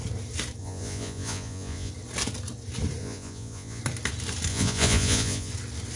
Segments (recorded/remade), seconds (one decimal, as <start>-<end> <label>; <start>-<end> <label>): 0.0-0.6 recorded; 0.6-1.9 remade; 1.9-3.0 recorded; 3.0-3.8 remade; 3.8-4.5 recorded; 4.5-5.5 remade; 5.5-6.0 recorded